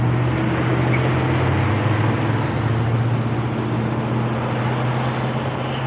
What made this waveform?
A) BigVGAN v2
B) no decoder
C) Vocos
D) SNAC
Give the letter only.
B